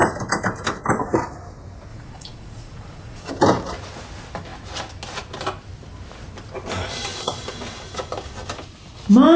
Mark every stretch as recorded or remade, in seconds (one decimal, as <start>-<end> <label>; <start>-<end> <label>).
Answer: 0.0-1.9 recorded; 1.9-3.3 remade; 3.3-9.4 recorded